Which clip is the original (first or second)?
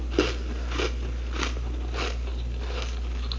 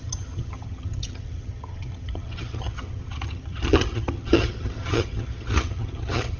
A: first